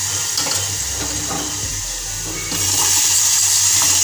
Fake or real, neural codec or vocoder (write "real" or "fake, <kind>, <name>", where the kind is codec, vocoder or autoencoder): real